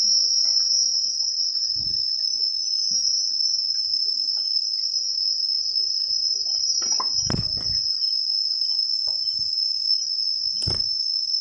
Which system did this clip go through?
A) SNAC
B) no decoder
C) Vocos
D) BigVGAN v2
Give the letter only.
B